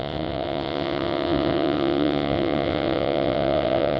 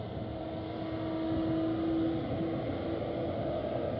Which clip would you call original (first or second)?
second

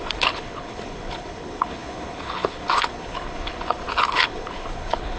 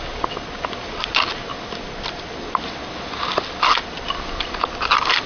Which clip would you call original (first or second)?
second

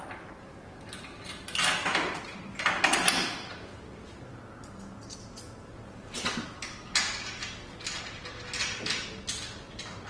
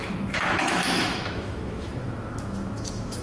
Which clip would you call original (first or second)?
first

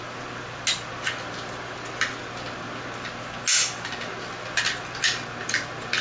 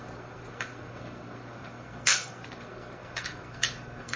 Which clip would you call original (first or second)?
first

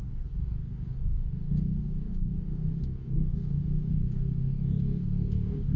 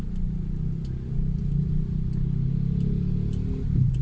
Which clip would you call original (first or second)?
second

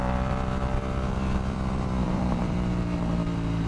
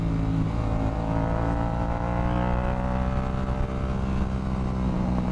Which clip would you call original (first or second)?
second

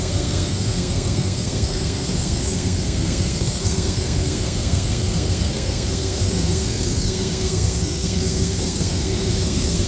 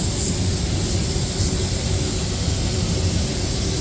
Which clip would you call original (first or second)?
second